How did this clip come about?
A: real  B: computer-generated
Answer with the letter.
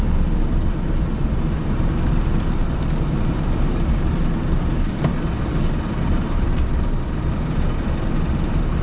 B